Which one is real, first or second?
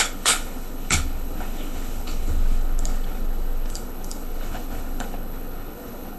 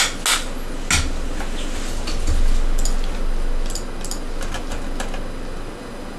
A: second